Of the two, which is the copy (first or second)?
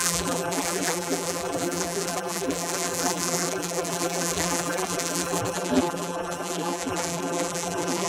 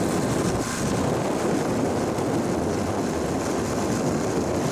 first